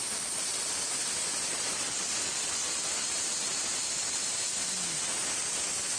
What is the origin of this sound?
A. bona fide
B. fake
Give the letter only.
A